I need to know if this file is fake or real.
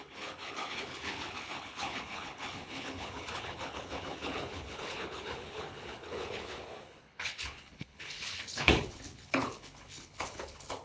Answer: fake